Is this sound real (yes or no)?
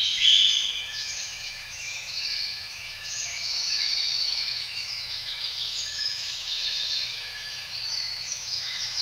no